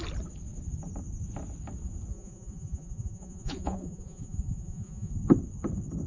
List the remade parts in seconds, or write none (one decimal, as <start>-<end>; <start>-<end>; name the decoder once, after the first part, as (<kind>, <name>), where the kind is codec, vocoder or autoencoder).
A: 2.1-5.1 (vocoder, Vocos)